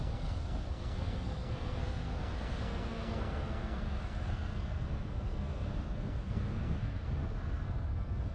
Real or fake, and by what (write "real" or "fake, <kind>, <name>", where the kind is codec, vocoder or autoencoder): fake, codec, SNAC